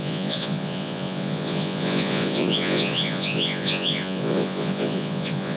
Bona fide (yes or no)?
no